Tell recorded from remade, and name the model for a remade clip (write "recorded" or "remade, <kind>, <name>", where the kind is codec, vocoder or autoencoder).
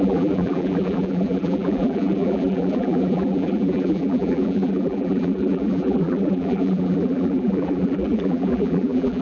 remade, vocoder, BigVGAN v2